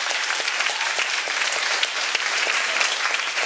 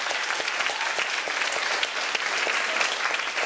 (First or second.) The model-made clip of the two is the first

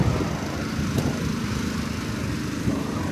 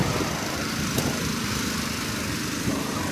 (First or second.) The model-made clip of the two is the second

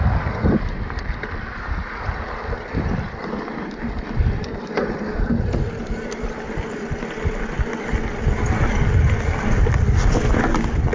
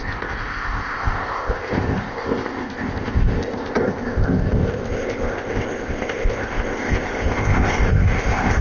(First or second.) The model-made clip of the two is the second